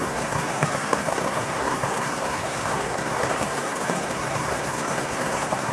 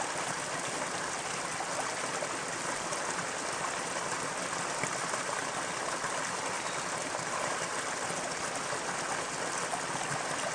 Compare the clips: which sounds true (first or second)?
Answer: second